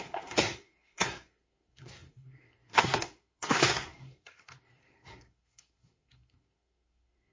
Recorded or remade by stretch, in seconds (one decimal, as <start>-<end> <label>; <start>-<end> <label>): 0.0-7.3 remade